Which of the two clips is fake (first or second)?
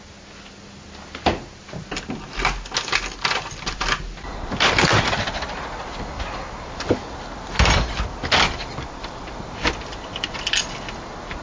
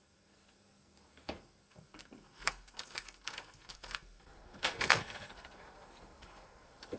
second